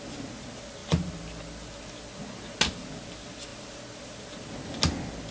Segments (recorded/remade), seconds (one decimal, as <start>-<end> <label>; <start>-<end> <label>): 0.0-5.3 recorded